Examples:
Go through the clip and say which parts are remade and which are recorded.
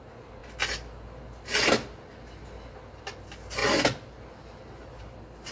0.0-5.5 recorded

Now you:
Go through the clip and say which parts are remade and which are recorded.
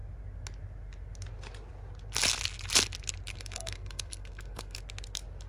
0.0-3.3 recorded; 3.3-4.8 remade; 4.8-5.5 recorded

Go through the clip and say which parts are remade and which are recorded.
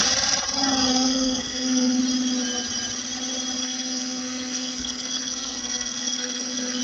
0.0-0.9 recorded; 0.9-2.0 remade; 2.0-3.6 recorded; 3.6-6.8 remade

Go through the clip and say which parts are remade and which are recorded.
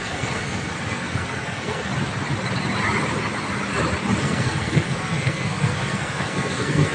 0.0-1.9 remade; 1.9-4.2 recorded; 4.2-6.9 remade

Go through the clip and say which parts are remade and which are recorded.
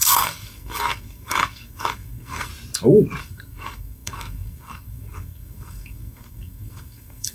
0.0-2.5 remade; 2.5-3.2 recorded; 3.2-7.3 remade